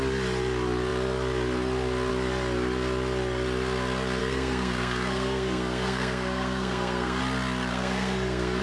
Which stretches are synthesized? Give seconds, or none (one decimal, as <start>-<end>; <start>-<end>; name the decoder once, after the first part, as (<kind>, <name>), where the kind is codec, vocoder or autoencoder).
4.2-7.2 (codec, SNAC); 7.7-8.6